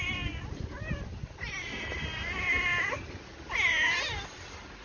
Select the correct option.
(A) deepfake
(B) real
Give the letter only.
B